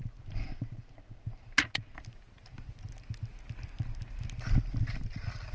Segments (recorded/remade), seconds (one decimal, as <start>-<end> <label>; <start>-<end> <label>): 0.0-5.5 recorded